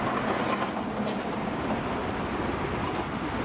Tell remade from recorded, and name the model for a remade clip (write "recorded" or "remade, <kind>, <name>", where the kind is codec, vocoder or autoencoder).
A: recorded